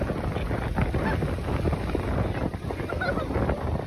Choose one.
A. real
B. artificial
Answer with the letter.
A